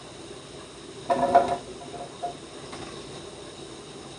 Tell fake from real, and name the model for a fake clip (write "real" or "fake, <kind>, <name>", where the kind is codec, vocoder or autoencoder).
real